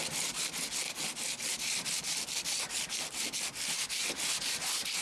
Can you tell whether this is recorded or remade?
recorded